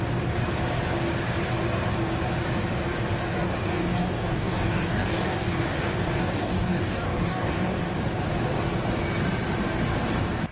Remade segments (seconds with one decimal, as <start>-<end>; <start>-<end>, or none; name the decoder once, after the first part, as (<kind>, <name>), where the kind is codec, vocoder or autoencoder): 3.6-7.8 (codec, DAC)